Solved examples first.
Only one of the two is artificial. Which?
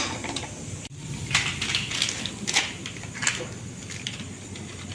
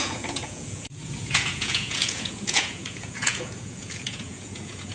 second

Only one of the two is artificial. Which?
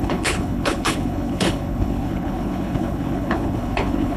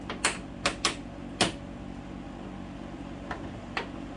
first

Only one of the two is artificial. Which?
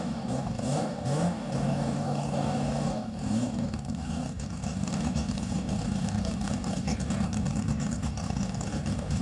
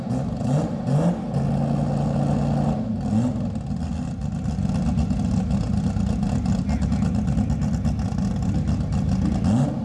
first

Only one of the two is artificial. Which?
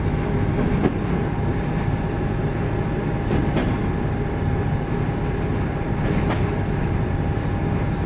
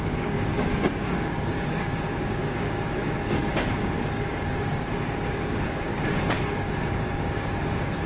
second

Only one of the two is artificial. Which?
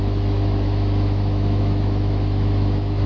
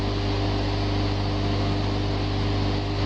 first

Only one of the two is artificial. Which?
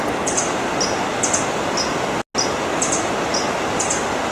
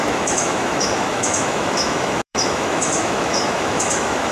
second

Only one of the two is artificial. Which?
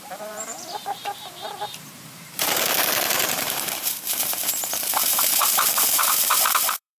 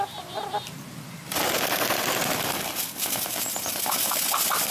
first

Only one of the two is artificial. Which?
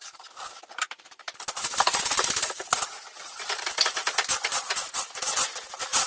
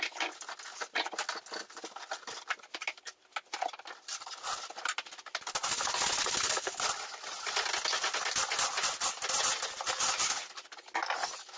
first